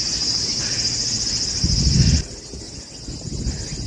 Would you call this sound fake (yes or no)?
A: no